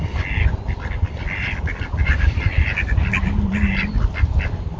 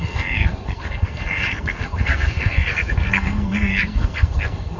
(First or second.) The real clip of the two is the first